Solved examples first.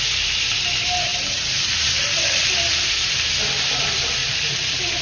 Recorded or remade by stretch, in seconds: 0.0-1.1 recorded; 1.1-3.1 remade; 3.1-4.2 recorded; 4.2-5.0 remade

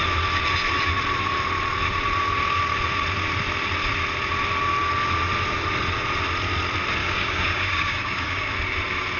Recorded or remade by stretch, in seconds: 0.0-7.0 recorded; 7.0-8.5 remade; 8.5-9.2 recorded

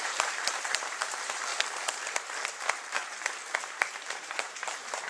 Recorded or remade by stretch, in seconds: 0.0-1.5 remade; 1.5-2.6 recorded; 2.6-3.0 remade; 3.0-3.8 recorded; 3.8-5.1 remade

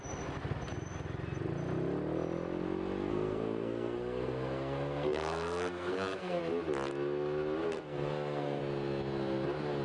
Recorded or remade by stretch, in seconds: 0.0-3.1 recorded; 3.1-6.4 remade; 6.4-7.6 recorded; 7.6-8.6 remade; 8.6-9.8 recorded

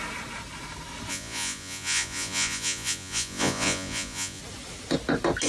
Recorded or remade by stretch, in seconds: 0.0-1.1 recorded; 1.1-4.4 remade; 4.4-5.5 recorded

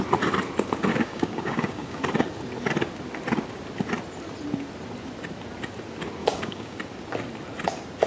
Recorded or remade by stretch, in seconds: 0.0-0.9 recorded; 0.9-2.0 remade; 2.0-6.2 recorded; 6.2-6.8 remade; 6.8-8.1 recorded